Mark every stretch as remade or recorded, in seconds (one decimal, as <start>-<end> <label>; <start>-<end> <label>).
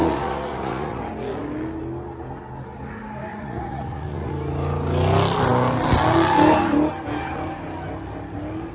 0.0-1.0 remade; 1.0-3.3 recorded; 3.3-4.3 remade; 4.3-8.7 recorded